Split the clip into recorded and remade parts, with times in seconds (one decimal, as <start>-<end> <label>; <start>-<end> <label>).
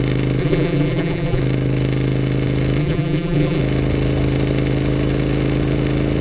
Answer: 0.0-0.4 recorded; 0.4-1.4 remade; 1.4-2.8 recorded; 2.8-3.6 remade; 3.6-6.2 recorded